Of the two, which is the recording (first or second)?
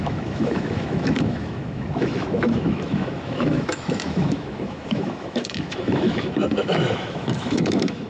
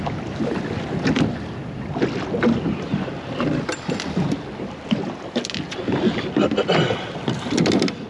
second